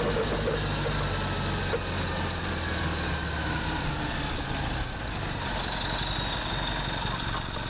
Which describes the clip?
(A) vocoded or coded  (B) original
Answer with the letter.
B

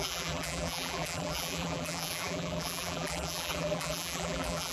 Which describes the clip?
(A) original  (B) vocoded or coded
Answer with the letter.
B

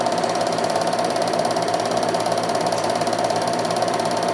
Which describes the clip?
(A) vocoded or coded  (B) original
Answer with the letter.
A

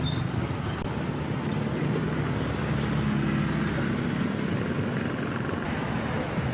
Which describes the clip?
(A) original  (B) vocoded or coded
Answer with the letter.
A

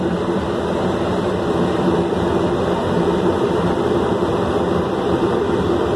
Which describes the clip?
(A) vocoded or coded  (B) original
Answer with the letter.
A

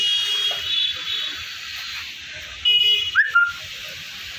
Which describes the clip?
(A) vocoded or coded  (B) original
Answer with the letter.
B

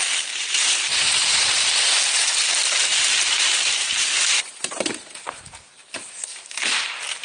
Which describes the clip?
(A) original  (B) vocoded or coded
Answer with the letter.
B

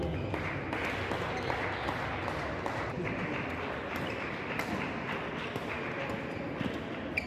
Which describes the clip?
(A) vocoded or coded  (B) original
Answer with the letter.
B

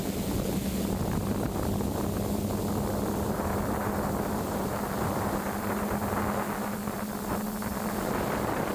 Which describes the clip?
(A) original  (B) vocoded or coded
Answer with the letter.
A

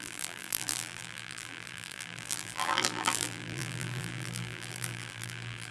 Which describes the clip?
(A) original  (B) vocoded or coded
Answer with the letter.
B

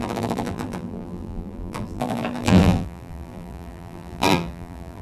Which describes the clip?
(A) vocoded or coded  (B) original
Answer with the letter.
A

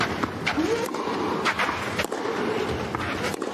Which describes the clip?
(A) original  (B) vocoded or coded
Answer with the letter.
A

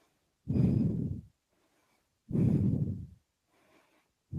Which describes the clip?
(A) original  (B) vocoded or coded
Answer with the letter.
B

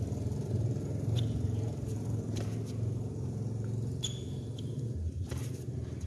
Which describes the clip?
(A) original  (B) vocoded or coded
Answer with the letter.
B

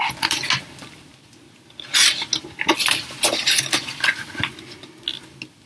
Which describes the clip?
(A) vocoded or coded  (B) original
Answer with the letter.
B